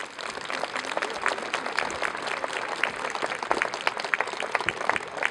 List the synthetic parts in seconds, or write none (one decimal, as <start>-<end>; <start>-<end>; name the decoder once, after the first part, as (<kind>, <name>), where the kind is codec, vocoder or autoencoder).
none